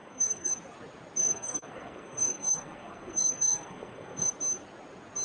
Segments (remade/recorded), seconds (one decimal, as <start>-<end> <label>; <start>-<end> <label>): 0.0-0.5 remade; 0.5-1.2 recorded; 1.2-4.3 remade; 4.3-5.2 recorded